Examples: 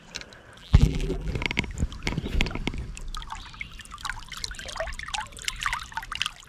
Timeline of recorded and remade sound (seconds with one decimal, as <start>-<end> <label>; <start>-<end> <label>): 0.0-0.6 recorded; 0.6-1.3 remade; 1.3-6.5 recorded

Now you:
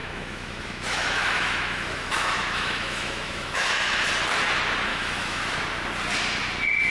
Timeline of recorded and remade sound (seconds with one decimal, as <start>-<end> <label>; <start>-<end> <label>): 0.0-4.1 remade; 4.1-4.9 recorded; 4.9-5.5 remade; 5.5-6.9 recorded

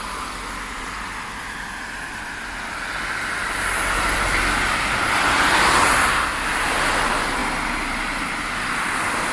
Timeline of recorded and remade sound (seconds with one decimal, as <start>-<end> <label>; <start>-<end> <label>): 0.0-9.3 recorded

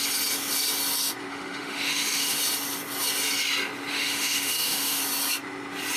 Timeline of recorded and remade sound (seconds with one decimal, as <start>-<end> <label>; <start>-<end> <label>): 0.0-1.3 recorded; 1.3-2.4 remade; 2.4-3.9 recorded; 3.9-5.0 remade; 5.0-6.0 recorded

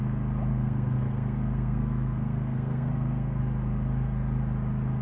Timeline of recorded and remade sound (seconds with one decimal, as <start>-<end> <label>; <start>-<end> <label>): 0.0-0.5 recorded; 0.5-3.4 remade; 3.4-5.0 recorded